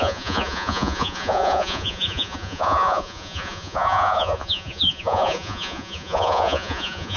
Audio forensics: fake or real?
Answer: fake